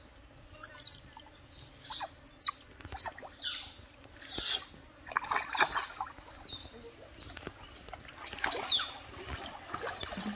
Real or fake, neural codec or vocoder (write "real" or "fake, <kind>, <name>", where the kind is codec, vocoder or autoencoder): real